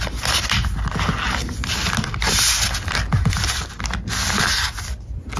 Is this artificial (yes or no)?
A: no